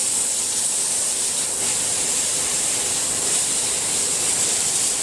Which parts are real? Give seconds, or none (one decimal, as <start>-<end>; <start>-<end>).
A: 0.0-1.7